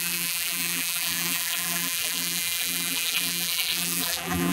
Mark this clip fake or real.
fake